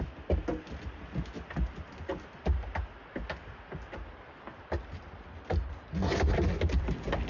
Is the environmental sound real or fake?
real